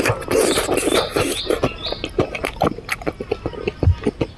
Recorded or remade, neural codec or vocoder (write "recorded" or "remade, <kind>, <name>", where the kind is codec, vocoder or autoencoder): recorded